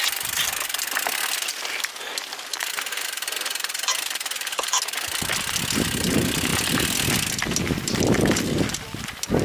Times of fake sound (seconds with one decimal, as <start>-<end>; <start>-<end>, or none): 2.5-4.8